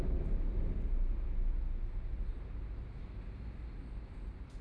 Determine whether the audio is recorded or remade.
recorded